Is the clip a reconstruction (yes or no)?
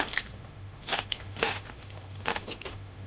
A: yes